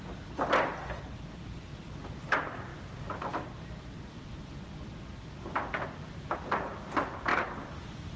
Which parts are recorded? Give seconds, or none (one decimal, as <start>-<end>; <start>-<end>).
0.0-8.2